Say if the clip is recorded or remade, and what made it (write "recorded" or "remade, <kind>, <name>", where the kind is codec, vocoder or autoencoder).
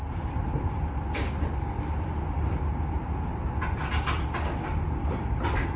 recorded